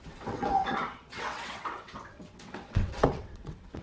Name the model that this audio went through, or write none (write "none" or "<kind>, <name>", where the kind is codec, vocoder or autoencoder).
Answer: vocoder, WaveNeXt